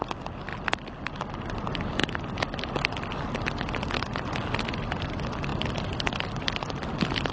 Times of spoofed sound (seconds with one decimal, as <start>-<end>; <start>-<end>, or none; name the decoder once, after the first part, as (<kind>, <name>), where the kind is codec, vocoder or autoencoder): none